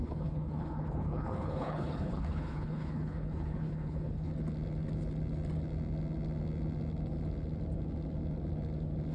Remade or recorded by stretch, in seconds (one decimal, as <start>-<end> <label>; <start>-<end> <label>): 0.0-4.3 remade; 4.3-9.1 recorded